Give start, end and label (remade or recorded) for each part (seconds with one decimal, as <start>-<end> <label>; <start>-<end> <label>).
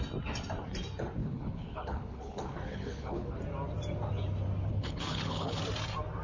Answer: 0.0-1.2 recorded; 1.2-3.4 remade; 3.4-4.7 recorded; 4.7-5.6 remade; 5.6-6.2 recorded